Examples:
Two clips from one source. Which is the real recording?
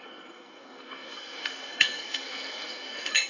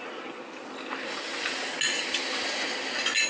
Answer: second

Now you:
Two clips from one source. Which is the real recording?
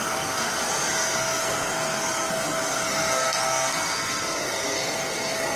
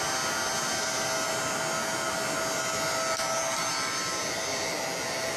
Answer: second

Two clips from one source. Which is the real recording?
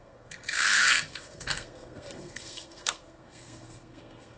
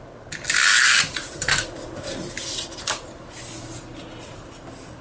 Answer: second